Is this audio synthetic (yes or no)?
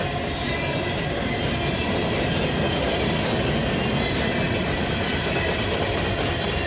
no